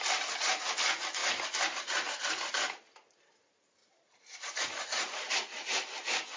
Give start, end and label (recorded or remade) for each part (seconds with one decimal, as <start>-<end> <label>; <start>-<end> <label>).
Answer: 0.0-3.8 recorded; 3.8-5.3 remade; 5.3-6.4 recorded